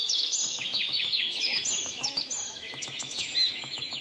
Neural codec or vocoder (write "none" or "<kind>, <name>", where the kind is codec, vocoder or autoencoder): autoencoder, DAC-VAE